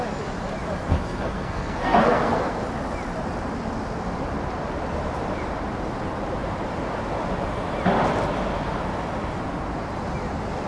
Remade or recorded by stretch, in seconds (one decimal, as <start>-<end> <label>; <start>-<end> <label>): 0.0-0.8 recorded; 0.8-2.6 remade; 2.6-10.7 recorded